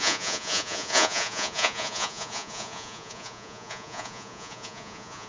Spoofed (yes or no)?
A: yes